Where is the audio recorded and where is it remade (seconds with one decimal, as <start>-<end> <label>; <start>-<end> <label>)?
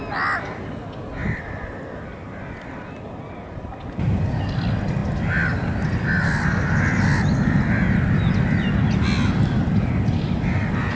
0.0-11.0 recorded